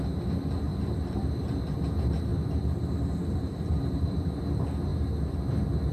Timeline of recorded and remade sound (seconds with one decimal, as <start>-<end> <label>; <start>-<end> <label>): 0.0-0.7 recorded; 0.7-1.8 remade; 1.8-2.3 recorded; 2.3-4.4 remade; 4.4-5.9 recorded